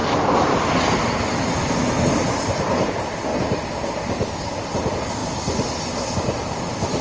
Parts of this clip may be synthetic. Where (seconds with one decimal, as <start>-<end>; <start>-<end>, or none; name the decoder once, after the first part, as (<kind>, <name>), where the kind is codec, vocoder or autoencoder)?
0.0-3.3 (vocoder, BigVGAN v2); 4.7-5.2; 6.5-7.0